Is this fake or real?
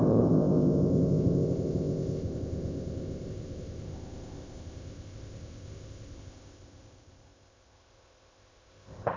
fake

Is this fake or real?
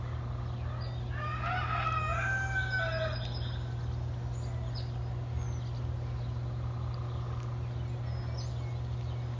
real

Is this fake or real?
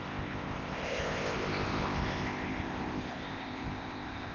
fake